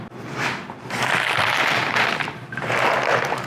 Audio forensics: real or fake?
real